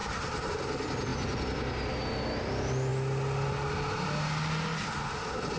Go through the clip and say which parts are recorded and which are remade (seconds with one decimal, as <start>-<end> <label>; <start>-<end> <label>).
0.0-5.6 recorded